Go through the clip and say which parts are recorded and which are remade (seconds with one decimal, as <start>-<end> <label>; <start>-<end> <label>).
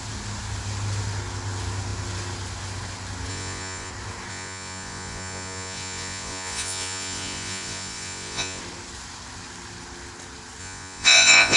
0.0-3.3 recorded; 3.3-3.9 remade; 3.9-4.3 recorded; 4.3-8.6 remade; 8.6-10.6 recorded; 10.6-11.6 remade